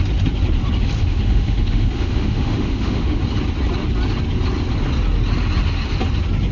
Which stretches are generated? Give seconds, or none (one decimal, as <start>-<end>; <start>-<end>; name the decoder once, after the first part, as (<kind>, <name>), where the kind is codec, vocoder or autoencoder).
1.0-3.2 (autoencoder, DAC-VAE)